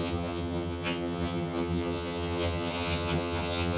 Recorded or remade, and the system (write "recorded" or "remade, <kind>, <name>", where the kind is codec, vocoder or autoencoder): remade, vocoder, HiFi-GAN